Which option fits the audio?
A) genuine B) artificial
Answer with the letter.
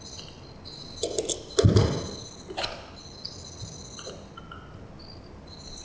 A